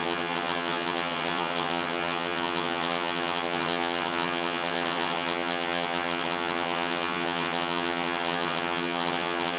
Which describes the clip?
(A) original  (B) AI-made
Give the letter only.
B